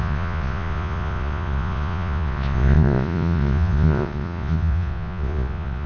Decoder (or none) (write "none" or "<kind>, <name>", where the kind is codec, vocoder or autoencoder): vocoder, Vocos